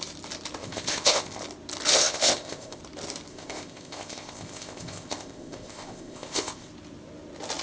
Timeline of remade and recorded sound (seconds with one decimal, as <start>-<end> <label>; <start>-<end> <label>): 0.0-0.6 recorded; 0.6-1.4 remade; 1.4-2.0 recorded; 2.0-2.8 remade; 2.8-3.3 recorded; 3.3-6.7 remade; 6.7-7.6 recorded